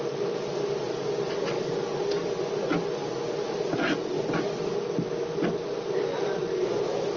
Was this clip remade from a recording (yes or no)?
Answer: no